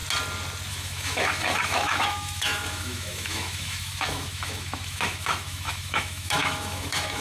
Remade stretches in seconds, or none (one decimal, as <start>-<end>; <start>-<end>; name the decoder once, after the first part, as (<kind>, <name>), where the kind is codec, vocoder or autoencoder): 0.7-7.2 (autoencoder, DAC-VAE)